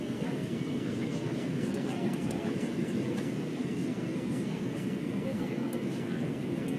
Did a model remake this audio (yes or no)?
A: yes